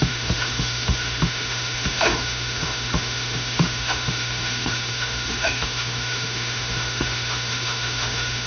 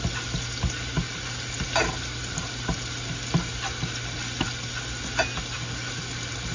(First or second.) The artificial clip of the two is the first